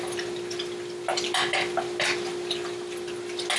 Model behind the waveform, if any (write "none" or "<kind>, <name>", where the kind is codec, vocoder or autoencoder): none